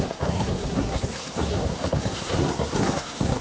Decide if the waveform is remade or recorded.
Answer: remade